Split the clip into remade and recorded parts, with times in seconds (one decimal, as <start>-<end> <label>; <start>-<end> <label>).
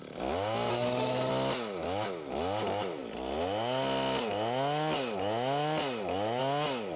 0.0-0.7 recorded; 0.7-1.3 remade; 1.3-7.0 recorded